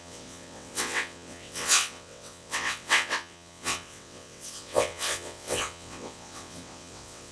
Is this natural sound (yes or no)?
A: no